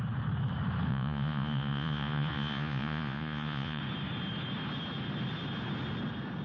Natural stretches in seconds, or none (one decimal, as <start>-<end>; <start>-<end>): 0.0-0.9; 3.8-6.4